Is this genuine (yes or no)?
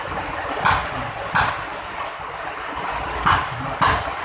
yes